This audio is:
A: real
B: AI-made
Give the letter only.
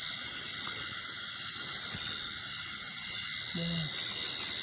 A